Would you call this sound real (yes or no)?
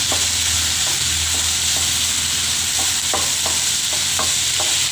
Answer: yes